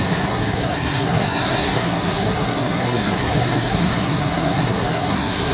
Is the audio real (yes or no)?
no